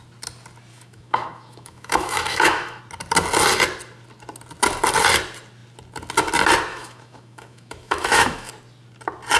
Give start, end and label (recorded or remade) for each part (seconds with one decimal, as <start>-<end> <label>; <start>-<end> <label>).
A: 0.0-0.7 recorded; 0.7-2.8 remade; 2.8-6.7 recorded; 6.7-8.5 remade; 8.5-9.4 recorded